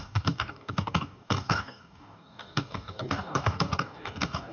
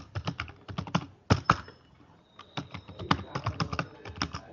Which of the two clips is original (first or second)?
second